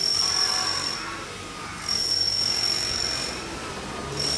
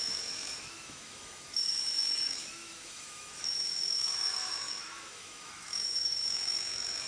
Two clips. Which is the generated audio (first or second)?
second